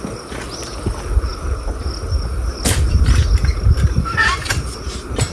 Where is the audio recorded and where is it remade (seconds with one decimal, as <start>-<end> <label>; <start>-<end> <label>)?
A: 0.0-5.3 recorded